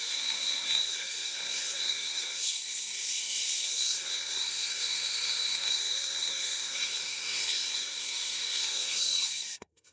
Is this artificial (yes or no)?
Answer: yes